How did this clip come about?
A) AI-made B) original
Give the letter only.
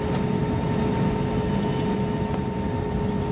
B